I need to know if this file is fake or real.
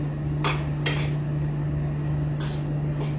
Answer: real